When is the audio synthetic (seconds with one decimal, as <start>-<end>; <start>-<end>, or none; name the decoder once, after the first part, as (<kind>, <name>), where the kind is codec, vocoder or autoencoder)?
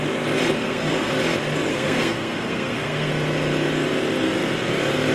0.6-1.1 (codec, SNAC); 1.7-3.1